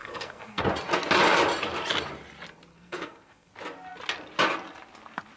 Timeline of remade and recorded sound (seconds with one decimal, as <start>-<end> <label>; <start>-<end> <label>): 0.0-0.6 remade; 0.6-2.7 recorded; 2.7-3.5 remade; 3.5-5.4 recorded